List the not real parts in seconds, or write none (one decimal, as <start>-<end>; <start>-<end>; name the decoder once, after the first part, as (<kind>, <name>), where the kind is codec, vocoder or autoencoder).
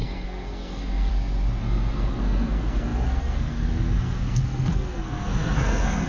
0.0-1.1 (codec, SNAC); 1.6-6.1